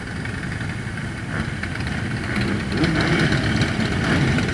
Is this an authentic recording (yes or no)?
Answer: yes